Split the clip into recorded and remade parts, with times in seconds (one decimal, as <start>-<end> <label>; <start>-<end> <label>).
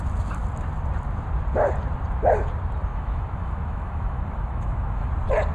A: 0.0-2.9 recorded; 2.9-5.1 remade; 5.1-5.5 recorded